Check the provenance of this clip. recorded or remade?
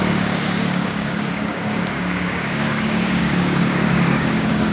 remade